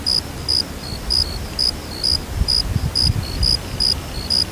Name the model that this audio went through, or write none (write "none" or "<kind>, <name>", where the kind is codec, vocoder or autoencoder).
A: none